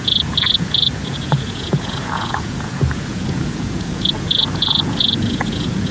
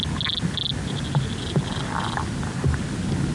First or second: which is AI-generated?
first